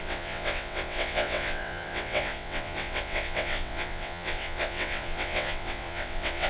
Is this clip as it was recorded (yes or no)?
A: no